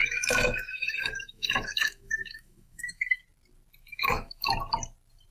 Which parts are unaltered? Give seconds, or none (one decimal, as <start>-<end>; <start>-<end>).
3.2-3.9; 4.5-5.3